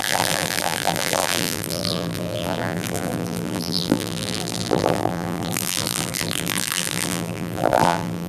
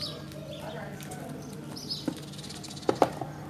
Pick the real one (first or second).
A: second